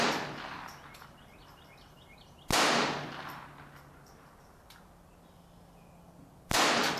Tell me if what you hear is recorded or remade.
recorded